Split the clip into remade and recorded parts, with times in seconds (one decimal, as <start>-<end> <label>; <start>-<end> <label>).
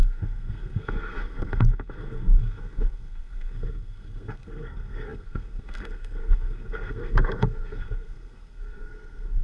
0.0-9.4 remade